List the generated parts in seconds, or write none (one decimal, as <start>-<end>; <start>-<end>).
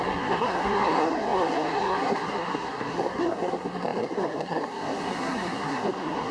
0.0-6.3